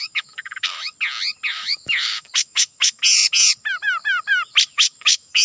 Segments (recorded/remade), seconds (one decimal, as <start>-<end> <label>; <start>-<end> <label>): 0.0-0.9 remade; 0.9-1.5 recorded; 1.5-3.0 remade; 3.0-4.7 recorded; 4.7-5.4 remade